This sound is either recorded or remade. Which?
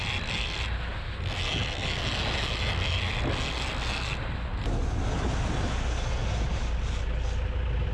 recorded